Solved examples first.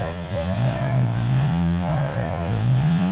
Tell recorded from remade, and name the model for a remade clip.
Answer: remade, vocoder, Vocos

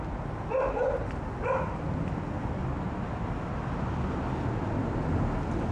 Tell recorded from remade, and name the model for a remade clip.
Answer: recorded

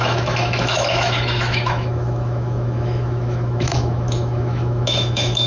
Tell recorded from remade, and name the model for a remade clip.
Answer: remade, autoencoder, DAC-VAE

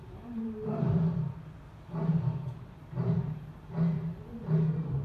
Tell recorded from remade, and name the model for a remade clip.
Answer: remade, vocoder, BigVGAN v2